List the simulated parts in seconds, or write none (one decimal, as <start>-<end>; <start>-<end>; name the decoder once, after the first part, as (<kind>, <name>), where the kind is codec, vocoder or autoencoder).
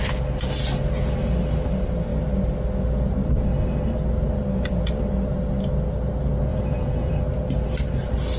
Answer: 6.5-7.1 (vocoder, Vocos)